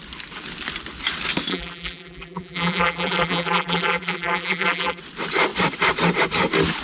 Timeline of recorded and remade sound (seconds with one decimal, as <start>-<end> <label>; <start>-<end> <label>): 0.0-1.5 recorded; 1.5-5.0 remade; 5.0-6.8 recorded